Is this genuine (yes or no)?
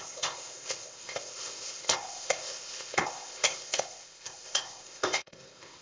no